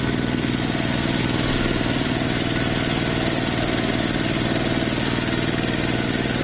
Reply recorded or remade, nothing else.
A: recorded